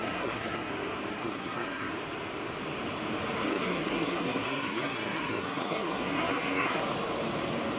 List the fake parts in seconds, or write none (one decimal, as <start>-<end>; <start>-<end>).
0.0-0.7; 1.1-1.9; 3.5-6.8